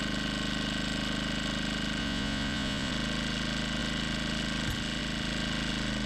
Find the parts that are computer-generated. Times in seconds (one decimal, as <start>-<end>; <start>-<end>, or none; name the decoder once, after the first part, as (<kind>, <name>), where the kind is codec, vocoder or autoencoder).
2.0-2.9 (vocoder, Vocos)